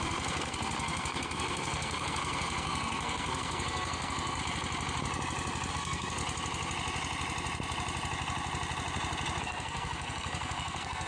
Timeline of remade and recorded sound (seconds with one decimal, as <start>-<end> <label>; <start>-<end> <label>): 0.0-4.4 remade; 4.4-5.7 recorded; 5.7-6.2 remade; 6.2-9.4 recorded; 9.4-11.1 remade